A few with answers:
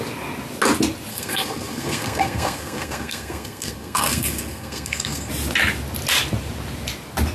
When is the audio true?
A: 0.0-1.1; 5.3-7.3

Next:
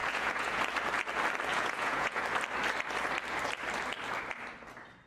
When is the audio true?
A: 0.6-1.5; 2.2-5.1

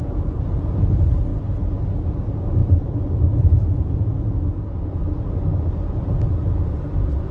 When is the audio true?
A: 0.0-7.3

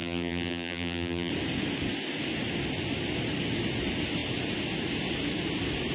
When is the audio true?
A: 1.3-5.9

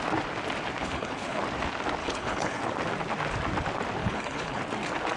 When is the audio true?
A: 0.0-0.8; 1.4-2.0; 2.6-4.0; 4.6-5.2